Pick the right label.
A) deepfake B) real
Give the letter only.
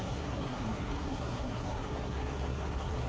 A